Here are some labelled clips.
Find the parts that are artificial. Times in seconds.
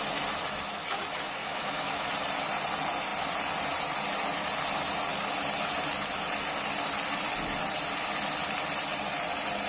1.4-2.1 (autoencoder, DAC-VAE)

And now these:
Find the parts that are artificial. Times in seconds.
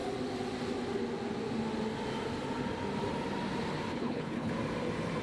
3.9-4.5 (codec, HILCodec)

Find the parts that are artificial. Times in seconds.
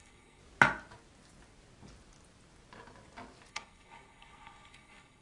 0.0-0.4 (codec, SNAC); 3.5-5.2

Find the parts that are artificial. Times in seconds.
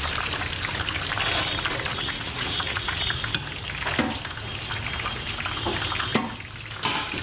1.9-3.2 (vocoder, Vocos)